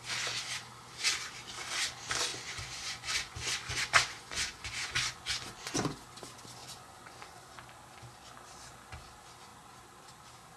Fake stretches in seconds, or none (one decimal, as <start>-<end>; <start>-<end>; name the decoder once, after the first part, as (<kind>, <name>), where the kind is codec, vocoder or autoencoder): 2.3-5.7 (vocoder, Vocos); 6.6-7.5